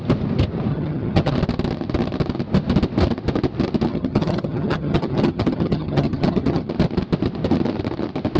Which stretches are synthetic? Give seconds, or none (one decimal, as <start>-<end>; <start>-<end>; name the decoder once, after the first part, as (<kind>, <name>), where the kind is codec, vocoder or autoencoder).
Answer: 0.7-1.3 (vocoder, HiFi-GAN); 3.9-6.7

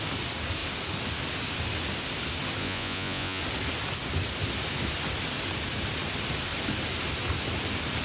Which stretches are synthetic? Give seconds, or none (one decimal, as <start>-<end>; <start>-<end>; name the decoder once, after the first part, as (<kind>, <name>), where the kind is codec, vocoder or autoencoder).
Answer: 2.6-3.4 (vocoder, Vocos)

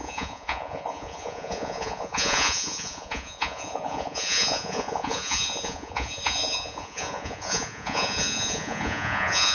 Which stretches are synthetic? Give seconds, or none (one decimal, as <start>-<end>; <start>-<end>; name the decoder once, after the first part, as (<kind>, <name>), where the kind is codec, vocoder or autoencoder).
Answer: 0.0-9.5 (vocoder, Vocos)